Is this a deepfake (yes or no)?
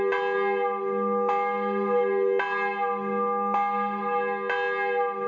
no